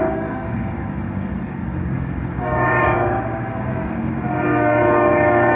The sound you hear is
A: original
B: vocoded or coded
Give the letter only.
B